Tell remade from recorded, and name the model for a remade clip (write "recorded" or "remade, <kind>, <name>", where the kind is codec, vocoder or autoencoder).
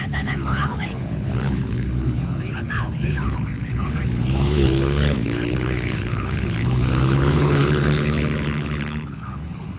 remade, codec, HILCodec